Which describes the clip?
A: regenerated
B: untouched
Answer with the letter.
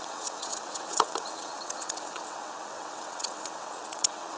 A